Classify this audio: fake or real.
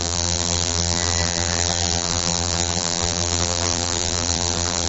fake